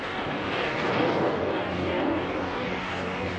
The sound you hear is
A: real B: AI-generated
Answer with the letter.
B